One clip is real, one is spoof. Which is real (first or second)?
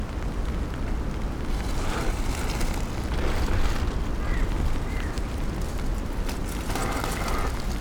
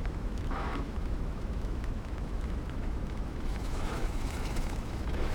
first